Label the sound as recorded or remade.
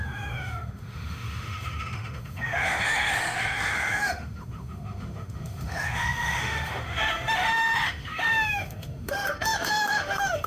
remade